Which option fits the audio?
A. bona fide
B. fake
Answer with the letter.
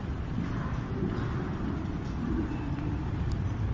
A